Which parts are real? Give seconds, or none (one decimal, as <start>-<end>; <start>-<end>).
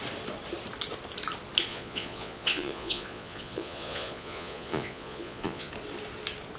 0.0-1.7; 5.7-6.6